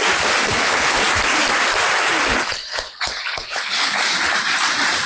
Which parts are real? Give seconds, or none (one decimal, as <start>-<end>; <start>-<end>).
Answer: 0.0-0.5; 1.0-2.3; 4.0-5.1

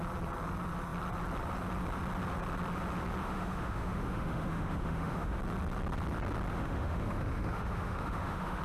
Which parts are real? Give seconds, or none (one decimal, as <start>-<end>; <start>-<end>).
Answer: 0.0-3.2; 5.4-6.5

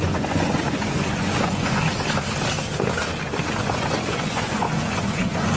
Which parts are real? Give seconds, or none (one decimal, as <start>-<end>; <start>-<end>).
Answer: 1.8-3.6

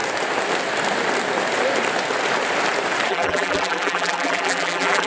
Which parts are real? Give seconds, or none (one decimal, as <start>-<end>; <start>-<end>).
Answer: 0.0-3.1